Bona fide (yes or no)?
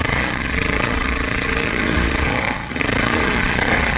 no